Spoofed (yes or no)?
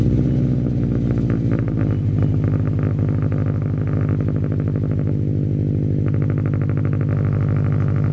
no